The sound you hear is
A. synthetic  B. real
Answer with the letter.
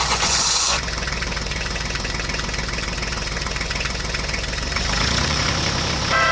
A